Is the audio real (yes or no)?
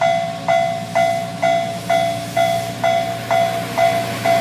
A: yes